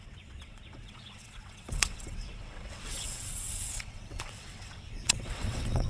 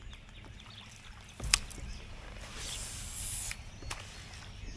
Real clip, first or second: second